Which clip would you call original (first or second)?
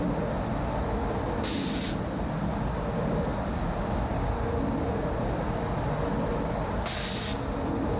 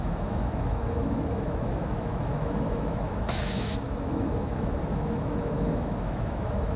first